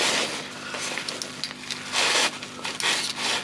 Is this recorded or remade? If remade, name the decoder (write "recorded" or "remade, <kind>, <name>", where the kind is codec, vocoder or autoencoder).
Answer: recorded